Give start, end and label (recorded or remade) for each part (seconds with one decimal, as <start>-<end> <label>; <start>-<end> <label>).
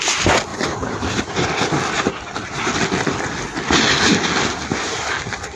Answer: 0.0-0.5 recorded; 0.5-1.2 remade; 1.2-5.5 recorded